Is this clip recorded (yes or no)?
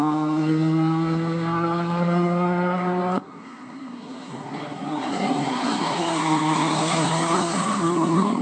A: no